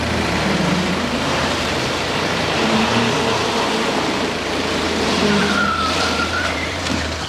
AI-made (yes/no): yes